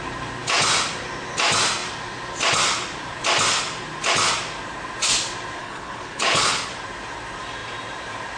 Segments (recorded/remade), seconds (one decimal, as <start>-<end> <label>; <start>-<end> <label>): 0.0-5.6 recorded; 5.6-6.7 remade; 6.7-8.4 recorded

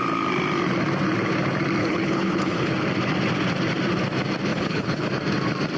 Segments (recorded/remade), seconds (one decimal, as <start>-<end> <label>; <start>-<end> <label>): 0.0-1.8 recorded; 1.8-2.7 remade; 2.7-4.5 recorded; 4.5-5.1 remade; 5.1-5.8 recorded

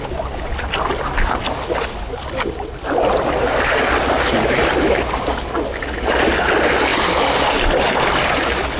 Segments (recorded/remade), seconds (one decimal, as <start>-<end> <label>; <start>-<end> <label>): 0.0-8.8 recorded

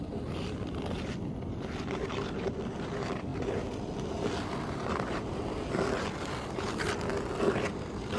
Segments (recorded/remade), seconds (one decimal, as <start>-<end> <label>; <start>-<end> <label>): 0.0-8.2 recorded